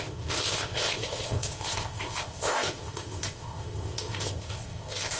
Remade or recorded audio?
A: remade